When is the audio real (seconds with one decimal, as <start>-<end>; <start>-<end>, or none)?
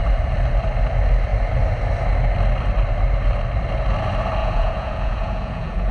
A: 0.0-4.4